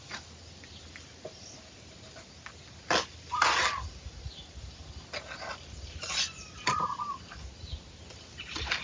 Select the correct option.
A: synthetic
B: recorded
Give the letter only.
B